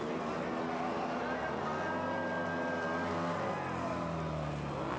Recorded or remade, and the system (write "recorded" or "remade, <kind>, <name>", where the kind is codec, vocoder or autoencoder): recorded